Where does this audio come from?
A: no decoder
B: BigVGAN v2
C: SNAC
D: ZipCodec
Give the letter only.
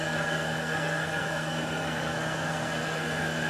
C